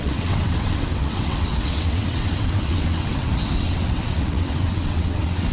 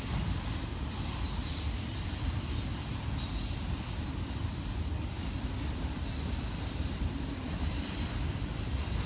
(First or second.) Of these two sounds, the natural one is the second